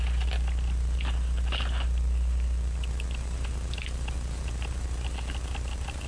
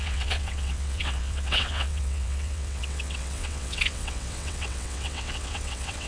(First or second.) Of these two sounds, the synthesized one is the second